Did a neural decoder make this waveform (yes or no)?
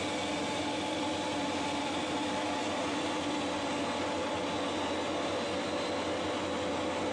no